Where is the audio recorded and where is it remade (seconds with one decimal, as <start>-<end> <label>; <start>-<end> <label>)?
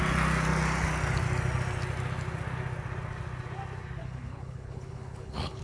0.0-4.0 recorded; 4.0-5.6 remade